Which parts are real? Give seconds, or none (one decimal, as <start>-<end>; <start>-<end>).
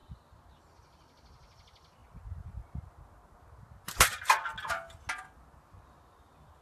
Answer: 0.0-6.6